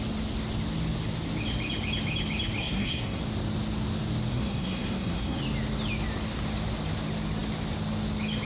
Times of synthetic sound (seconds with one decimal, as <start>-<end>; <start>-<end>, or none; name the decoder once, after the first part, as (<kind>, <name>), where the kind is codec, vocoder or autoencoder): 2.6-3.2 (codec, SNAC); 4.3-5.4